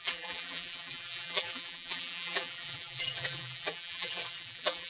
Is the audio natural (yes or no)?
no